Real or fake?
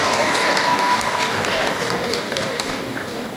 fake